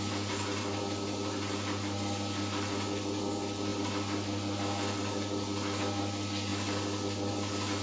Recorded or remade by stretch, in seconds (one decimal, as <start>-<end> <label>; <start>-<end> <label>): 0.0-7.8 recorded